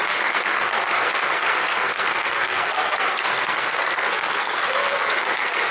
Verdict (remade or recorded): remade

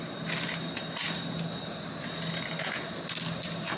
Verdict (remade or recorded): recorded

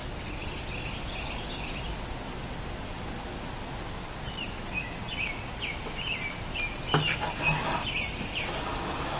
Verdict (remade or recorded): recorded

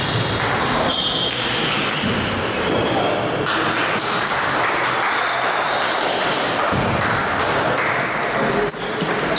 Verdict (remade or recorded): recorded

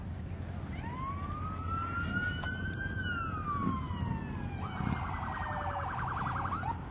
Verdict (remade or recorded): recorded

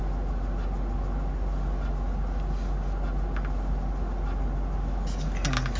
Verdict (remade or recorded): recorded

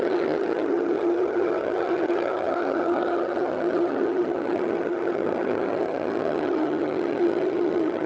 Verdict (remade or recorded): remade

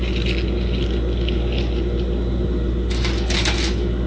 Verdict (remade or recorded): recorded